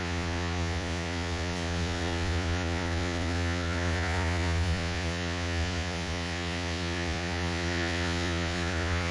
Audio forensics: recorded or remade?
remade